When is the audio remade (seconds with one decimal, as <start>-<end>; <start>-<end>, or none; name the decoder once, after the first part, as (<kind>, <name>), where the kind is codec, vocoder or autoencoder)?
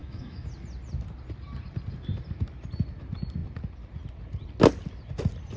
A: 0.0-0.5 (autoencoder, DAC-VAE)